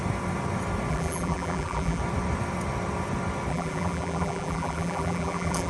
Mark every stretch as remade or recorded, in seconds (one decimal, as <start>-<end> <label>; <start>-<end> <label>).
0.0-0.9 recorded; 0.9-2.0 remade; 2.0-3.5 recorded; 3.5-5.7 remade